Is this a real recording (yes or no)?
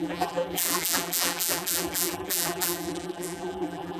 no